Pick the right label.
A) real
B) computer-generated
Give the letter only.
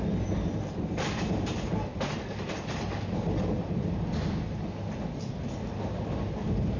A